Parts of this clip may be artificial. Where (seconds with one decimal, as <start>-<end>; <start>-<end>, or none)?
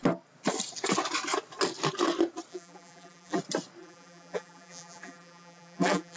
2.5-3.4; 3.8-6.2